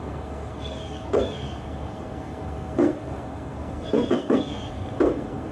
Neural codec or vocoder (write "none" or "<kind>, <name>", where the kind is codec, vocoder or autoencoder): codec, SNAC